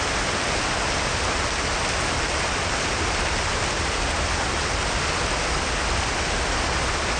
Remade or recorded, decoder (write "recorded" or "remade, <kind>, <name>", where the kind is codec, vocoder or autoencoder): recorded